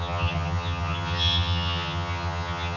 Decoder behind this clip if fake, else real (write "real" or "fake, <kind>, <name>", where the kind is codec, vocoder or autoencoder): fake, vocoder, HiFi-GAN